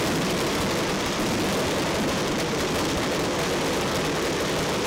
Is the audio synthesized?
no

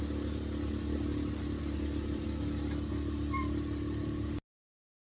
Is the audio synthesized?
no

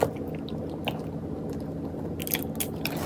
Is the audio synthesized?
no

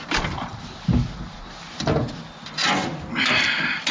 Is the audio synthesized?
no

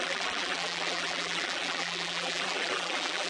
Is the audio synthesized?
yes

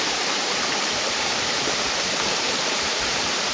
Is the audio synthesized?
yes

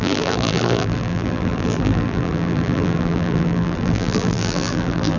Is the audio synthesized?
yes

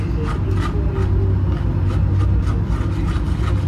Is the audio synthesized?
no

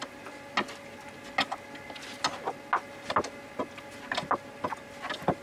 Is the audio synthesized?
no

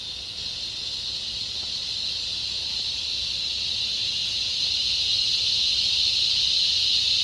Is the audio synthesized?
no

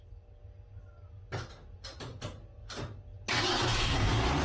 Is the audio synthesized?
no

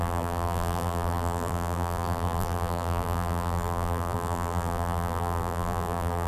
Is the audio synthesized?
yes